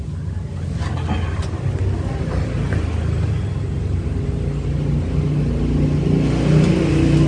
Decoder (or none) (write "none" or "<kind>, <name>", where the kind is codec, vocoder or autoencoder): none